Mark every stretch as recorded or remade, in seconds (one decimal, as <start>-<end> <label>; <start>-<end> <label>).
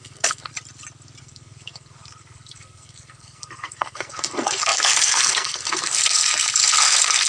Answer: 0.0-0.5 remade; 0.5-1.2 recorded; 1.2-7.3 remade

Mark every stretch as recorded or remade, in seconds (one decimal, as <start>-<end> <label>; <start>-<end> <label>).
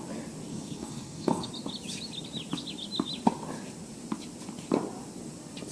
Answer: 0.0-0.5 recorded; 0.5-1.5 remade; 1.5-5.7 recorded